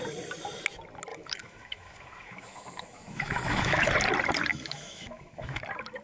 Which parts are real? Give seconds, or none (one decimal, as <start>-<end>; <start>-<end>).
0.0-1.1; 3.9-4.5; 5.6-6.0